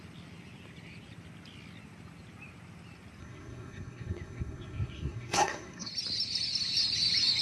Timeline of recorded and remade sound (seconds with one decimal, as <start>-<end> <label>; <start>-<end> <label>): 0.0-3.2 recorded; 3.2-5.9 remade; 5.9-7.4 recorded